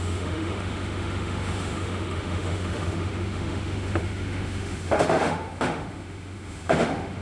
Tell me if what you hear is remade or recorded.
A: remade